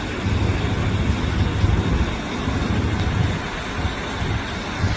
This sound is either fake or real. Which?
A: real